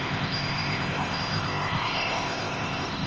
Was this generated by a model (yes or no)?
yes